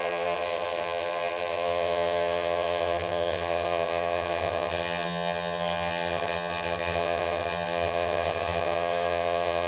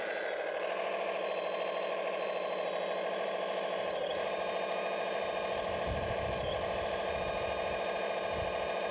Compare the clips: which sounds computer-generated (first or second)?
first